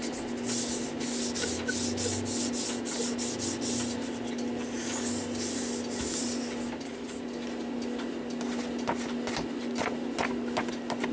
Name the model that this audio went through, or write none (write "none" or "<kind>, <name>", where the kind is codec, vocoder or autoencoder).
none